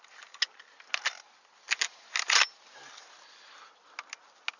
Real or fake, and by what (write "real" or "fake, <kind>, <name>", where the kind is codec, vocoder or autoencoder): real